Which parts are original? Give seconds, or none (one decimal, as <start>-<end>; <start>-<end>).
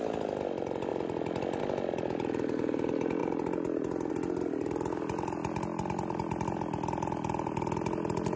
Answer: 0.0-0.9; 1.6-8.4